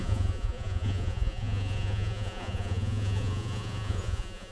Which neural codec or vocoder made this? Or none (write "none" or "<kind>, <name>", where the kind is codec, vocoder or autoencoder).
vocoder, Vocos